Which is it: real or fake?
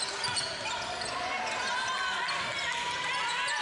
real